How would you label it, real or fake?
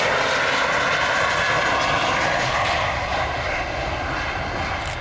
real